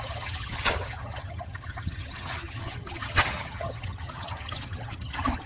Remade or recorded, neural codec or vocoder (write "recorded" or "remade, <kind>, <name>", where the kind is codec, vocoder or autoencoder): remade, vocoder, HiFi-GAN